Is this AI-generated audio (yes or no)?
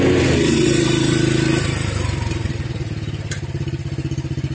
no